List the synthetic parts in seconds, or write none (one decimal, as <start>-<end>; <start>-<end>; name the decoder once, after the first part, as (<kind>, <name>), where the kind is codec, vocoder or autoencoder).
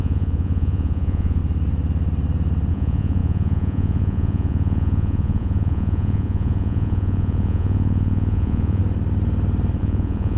0.0-1.4 (vocoder, Vocos); 2.7-8.8; 9.8-10.4